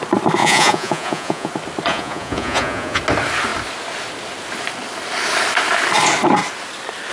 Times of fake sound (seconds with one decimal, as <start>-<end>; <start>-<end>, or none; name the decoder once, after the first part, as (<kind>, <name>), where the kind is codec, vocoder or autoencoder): 0.4-1.5 (vocoder, Vocos); 1.9-3.0